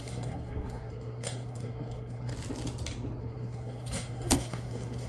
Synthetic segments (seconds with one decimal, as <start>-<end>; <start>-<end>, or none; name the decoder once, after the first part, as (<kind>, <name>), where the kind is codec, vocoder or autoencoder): 0.0-2.3 (codec, SNAC); 3.2-5.1